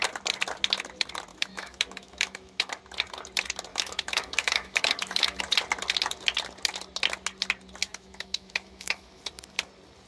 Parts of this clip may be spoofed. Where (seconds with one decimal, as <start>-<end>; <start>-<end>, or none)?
1.3-2.8; 3.7-5.4; 7.8-9.2